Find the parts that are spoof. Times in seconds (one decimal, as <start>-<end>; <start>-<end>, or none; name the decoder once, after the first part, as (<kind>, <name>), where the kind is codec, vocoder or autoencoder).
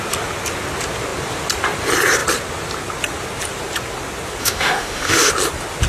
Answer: 4.4-5.3 (autoencoder, DAC-VAE)